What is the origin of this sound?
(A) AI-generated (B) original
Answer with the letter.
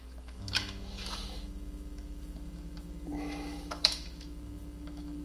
A